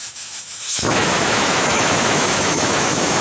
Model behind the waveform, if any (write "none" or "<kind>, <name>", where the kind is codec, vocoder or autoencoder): autoencoder, DAC-VAE